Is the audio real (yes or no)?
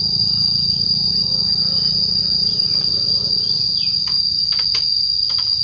yes